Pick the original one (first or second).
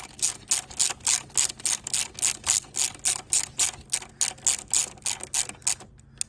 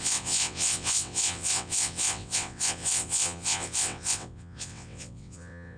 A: first